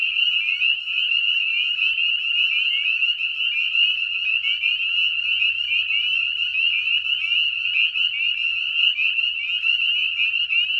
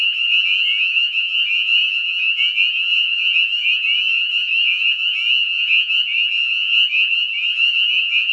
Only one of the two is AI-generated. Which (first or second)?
second